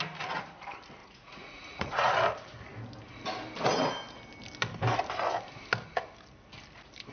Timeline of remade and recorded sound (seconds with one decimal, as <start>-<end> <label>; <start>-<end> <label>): 0.0-1.0 recorded; 1.0-2.1 remade; 2.1-7.1 recorded